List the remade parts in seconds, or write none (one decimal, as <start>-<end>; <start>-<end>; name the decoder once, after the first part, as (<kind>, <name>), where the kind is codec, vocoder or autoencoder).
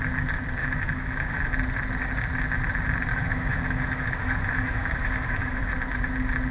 0.6-1.5 (autoencoder, DAC-VAE); 3.1-5.6